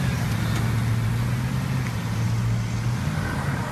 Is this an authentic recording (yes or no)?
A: yes